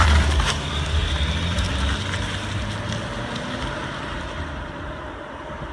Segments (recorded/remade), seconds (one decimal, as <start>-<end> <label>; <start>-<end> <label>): 0.0-1.0 remade; 1.0-4.4 recorded; 4.4-5.7 remade